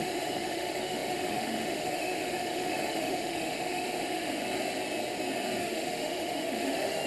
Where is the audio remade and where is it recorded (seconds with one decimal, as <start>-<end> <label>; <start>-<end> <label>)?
0.0-4.4 remade; 4.4-5.6 recorded; 5.6-7.1 remade